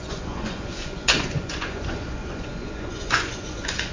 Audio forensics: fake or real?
fake